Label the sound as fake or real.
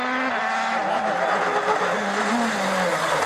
real